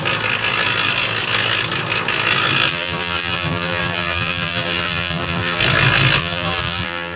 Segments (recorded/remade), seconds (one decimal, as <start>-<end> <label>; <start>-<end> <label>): 0.0-2.7 recorded; 2.7-5.6 remade; 5.6-6.2 recorded; 6.2-7.2 remade